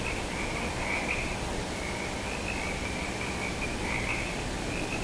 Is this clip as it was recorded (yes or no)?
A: yes